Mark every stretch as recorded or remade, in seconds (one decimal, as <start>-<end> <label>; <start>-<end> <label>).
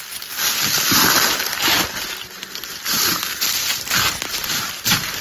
0.0-1.5 recorded; 1.5-4.6 remade; 4.6-5.2 recorded